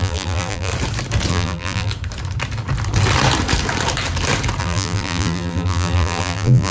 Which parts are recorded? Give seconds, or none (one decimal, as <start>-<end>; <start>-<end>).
0.7-1.3; 1.9-4.6